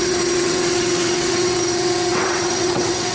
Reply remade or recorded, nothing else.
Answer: remade